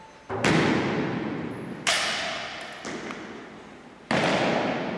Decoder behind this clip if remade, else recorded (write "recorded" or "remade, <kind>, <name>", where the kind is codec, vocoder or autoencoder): recorded